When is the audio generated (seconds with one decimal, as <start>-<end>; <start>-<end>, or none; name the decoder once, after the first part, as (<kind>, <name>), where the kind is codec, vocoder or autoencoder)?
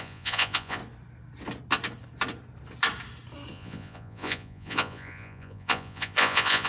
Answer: 0.0-0.8 (vocoder, Vocos); 3.5-6.7